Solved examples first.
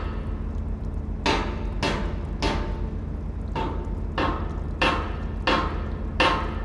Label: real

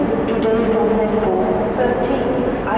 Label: real